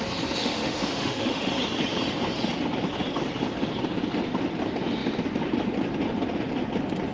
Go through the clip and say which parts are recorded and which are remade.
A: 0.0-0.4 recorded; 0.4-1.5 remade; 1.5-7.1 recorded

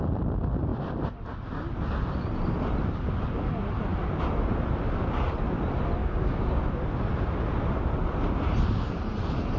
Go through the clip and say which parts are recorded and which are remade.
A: 0.0-6.0 recorded; 6.0-6.6 remade; 6.6-9.6 recorded

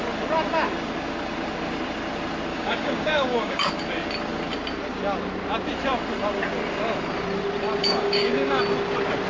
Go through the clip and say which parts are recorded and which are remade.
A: 0.0-2.5 recorded; 2.5-3.7 remade; 3.7-7.8 recorded; 7.8-8.6 remade; 8.6-9.3 recorded

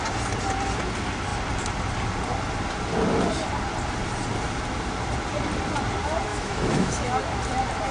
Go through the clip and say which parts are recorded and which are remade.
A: 0.0-6.3 recorded; 6.3-7.1 remade; 7.1-7.9 recorded

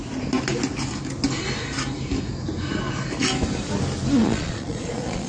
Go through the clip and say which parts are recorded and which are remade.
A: 0.0-4.2 recorded; 4.2-5.3 remade